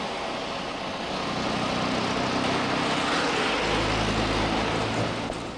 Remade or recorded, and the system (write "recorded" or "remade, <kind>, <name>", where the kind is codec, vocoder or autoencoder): recorded